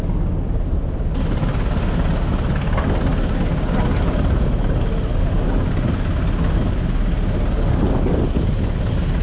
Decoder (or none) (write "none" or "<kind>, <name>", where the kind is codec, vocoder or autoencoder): none